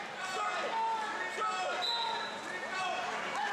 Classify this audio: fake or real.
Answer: real